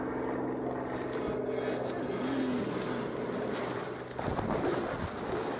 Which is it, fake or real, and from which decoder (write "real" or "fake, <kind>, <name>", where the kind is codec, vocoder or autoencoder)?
real